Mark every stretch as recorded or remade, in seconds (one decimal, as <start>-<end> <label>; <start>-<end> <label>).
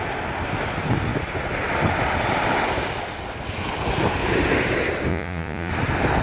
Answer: 0.0-5.1 recorded; 5.1-5.7 remade; 5.7-6.2 recorded